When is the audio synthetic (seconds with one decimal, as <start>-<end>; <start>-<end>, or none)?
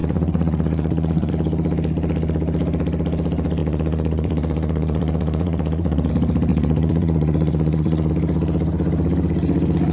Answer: 0.0-1.3; 3.6-6.1; 6.5-8.1